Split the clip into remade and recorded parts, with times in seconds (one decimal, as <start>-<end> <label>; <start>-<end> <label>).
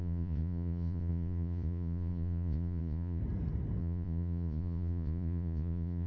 0.0-3.2 remade; 3.2-3.8 recorded; 3.8-6.1 remade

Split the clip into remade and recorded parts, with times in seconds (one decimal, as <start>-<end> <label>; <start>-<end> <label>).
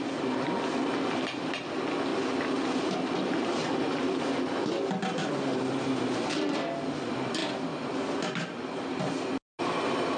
0.0-10.2 recorded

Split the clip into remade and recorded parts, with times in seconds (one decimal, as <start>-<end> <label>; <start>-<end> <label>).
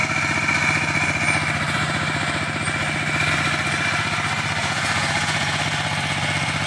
0.0-4.6 recorded; 4.6-5.6 remade; 5.6-6.7 recorded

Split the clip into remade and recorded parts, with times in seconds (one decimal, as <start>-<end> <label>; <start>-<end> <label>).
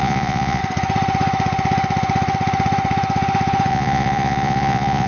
0.0-0.6 remade; 0.6-3.7 recorded; 3.7-5.1 remade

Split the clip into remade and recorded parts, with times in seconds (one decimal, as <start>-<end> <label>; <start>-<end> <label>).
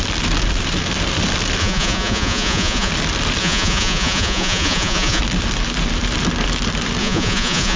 0.0-1.6 recorded; 1.6-2.9 remade; 2.9-3.4 recorded; 3.4-5.2 remade; 5.2-7.0 recorded; 7.0-7.8 remade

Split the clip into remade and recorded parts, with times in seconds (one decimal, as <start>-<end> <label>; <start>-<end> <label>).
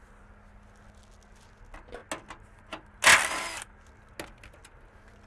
0.0-5.3 recorded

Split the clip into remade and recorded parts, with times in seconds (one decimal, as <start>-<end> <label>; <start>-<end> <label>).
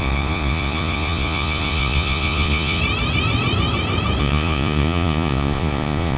0.0-2.8 remade; 2.8-4.2 recorded; 4.2-6.2 remade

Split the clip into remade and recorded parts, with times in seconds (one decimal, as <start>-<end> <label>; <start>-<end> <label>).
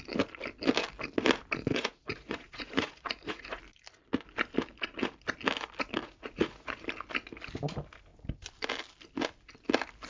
0.0-1.7 recorded; 1.7-3.6 remade; 3.6-6.0 recorded; 6.0-6.7 remade; 6.7-10.1 recorded